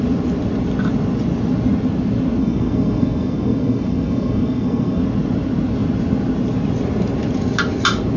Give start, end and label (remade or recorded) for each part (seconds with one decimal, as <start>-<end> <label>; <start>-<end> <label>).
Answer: 0.0-2.4 recorded; 2.4-5.0 remade; 5.0-8.2 recorded